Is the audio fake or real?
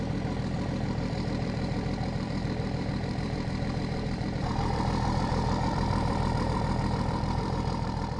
fake